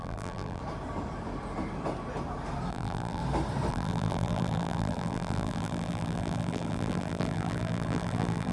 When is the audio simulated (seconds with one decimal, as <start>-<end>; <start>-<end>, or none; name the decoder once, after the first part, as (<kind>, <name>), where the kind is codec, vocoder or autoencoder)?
0.0-0.6 (vocoder, BigVGAN v2); 2.7-3.2; 3.7-8.5